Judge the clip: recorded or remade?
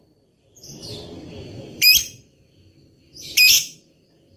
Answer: remade